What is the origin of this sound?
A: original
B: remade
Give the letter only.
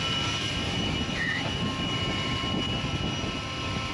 A